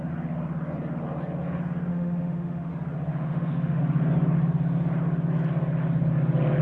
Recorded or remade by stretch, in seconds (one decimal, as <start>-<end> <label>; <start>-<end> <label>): 0.0-1.9 recorded; 1.9-2.7 remade; 2.7-3.1 recorded; 3.1-3.8 remade; 3.8-6.6 recorded

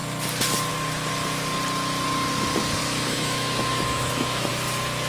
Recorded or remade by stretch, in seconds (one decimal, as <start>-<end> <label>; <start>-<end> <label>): 0.0-2.8 recorded; 2.8-4.5 remade; 4.5-5.1 recorded

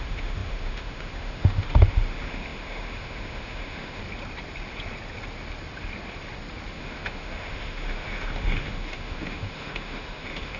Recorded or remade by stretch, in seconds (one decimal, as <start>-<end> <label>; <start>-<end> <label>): 0.0-4.0 remade; 4.0-6.7 recorded; 6.7-10.6 remade

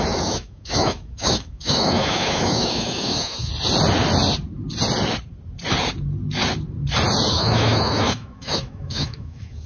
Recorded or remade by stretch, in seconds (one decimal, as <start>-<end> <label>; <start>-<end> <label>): 0.0-3.5 remade; 3.5-7.3 recorded; 7.3-9.7 remade

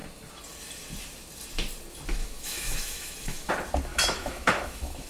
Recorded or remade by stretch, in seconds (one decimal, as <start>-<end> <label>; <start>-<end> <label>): 0.0-2.2 recorded; 2.2-3.5 remade; 3.5-3.9 recorded; 3.9-5.1 remade

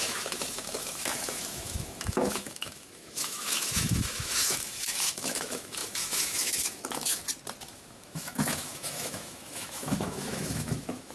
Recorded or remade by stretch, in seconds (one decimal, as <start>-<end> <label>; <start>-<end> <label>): 0.0-7.2 remade; 7.2-7.7 recorded; 7.7-11.1 remade

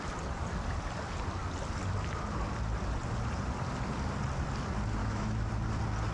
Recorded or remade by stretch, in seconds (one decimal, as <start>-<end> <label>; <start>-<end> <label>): 0.0-5.0 recorded; 5.0-5.5 remade; 5.5-6.1 recorded